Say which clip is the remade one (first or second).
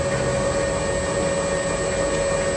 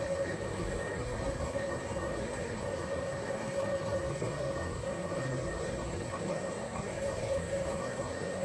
second